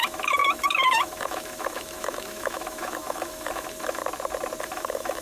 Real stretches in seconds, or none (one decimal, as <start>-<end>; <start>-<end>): 4.0-4.6